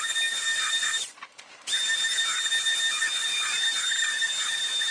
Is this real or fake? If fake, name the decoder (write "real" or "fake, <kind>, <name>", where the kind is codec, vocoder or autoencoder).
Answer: real